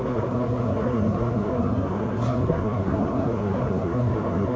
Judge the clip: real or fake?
fake